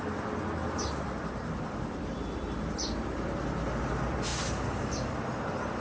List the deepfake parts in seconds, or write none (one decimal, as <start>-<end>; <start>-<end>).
0.6-3.8; 4.3-5.2